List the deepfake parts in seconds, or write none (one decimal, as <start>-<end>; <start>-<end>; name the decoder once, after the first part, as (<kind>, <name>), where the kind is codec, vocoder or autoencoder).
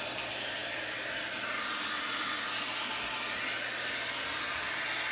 none